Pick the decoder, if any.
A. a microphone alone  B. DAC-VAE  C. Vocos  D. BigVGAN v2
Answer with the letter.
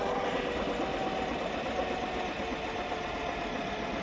A